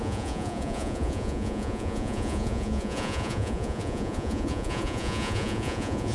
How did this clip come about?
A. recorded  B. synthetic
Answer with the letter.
B